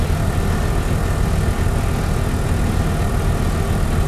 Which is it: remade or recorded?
recorded